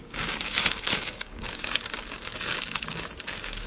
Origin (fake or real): fake